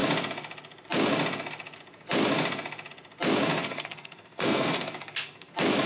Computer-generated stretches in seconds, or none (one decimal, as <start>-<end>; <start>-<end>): 3.5-5.5